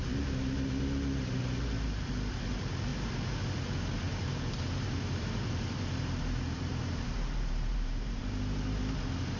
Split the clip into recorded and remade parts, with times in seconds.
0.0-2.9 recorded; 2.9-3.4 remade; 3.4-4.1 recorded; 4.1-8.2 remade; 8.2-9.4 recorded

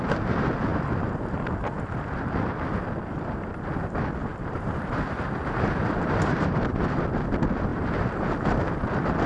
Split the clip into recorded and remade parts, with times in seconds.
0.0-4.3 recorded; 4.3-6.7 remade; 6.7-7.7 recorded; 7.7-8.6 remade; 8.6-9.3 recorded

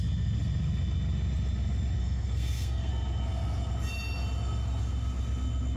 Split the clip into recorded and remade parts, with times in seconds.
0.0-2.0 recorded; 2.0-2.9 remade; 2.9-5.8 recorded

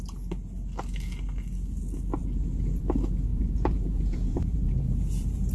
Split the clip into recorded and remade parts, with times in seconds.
0.0-3.3 recorded; 3.3-5.5 remade

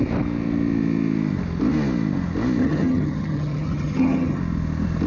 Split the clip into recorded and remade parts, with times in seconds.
0.0-2.6 recorded; 2.6-4.4 remade; 4.4-5.1 recorded